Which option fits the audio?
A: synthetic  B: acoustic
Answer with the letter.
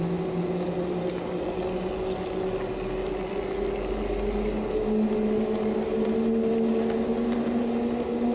B